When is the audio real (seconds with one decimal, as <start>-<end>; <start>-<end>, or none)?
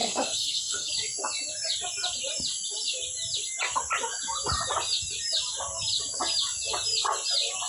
0.9-7.7